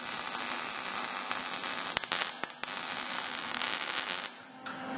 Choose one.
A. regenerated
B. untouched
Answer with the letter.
B